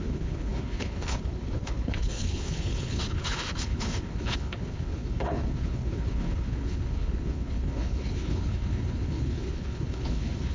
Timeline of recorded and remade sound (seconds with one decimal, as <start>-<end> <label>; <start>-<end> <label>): 0.0-10.5 remade